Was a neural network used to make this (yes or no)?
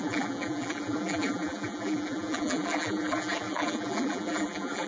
yes